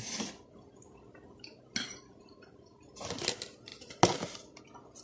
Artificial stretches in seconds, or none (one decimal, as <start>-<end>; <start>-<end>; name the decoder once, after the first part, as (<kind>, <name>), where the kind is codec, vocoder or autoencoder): none